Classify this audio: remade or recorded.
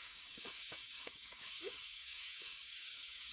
remade